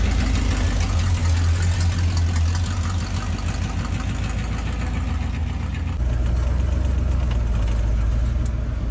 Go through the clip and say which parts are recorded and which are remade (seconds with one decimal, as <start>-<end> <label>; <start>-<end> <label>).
0.0-8.9 recorded